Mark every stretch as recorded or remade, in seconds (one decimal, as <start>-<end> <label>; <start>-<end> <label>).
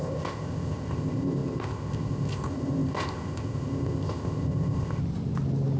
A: 0.0-5.0 remade; 5.0-5.8 recorded